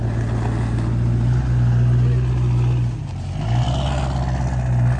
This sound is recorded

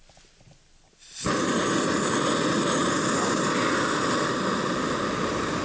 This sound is recorded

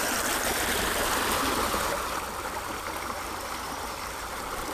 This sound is recorded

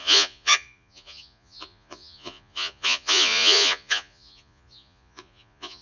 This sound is remade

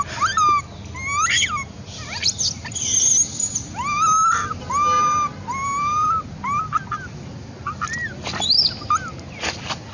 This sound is recorded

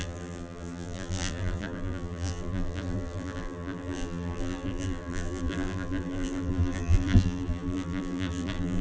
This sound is remade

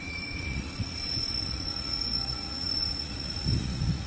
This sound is remade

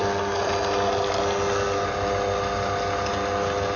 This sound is recorded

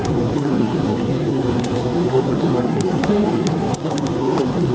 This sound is remade